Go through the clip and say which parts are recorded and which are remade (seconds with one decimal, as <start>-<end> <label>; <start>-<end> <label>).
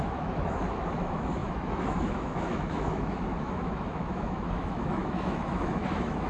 0.0-6.3 remade